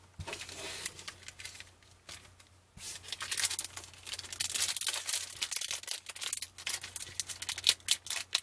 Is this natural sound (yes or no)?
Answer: yes